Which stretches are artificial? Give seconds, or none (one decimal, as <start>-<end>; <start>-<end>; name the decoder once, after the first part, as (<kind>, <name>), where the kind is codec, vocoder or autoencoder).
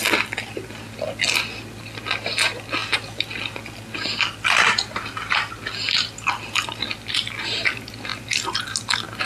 none